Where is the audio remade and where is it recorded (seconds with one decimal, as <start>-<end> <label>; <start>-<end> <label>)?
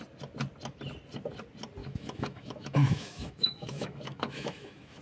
0.0-1.8 recorded; 1.8-5.0 remade